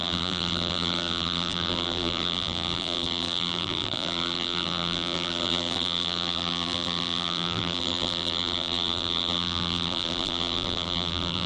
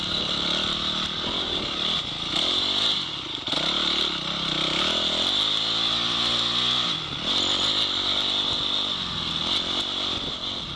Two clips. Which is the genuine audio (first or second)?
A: second